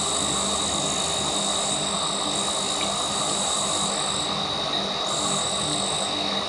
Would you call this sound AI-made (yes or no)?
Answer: no